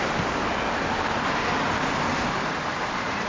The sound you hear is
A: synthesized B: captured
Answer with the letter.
B